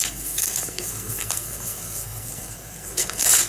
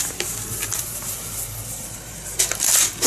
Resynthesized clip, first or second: first